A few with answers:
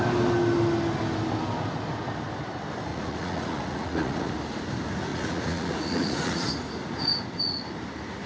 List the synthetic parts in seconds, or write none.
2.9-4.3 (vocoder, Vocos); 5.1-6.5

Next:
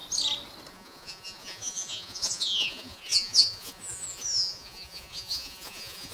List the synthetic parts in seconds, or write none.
0.7-6.1 (vocoder, Vocos)

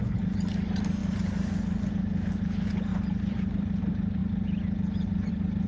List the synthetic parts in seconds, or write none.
1.0-1.9 (vocoder, BigVGAN v2); 2.9-3.8

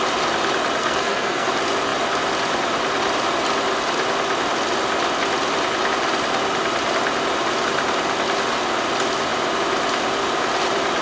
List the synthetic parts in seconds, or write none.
0.8-1.5 (codec, SNAC)